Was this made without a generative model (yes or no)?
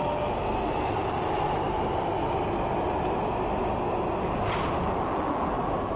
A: yes